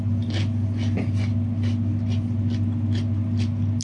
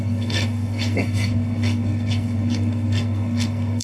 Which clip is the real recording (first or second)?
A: first